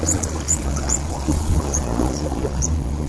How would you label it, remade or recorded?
remade